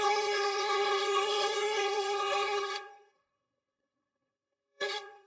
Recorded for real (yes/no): no